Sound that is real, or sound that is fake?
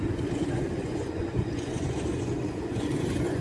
fake